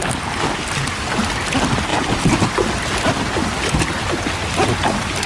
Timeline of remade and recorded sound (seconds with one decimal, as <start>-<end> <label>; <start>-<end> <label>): 0.0-5.3 recorded